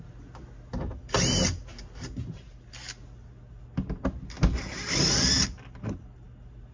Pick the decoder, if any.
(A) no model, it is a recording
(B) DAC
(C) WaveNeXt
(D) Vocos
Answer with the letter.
A